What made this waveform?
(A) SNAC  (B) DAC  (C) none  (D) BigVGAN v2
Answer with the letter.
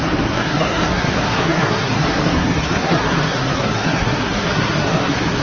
A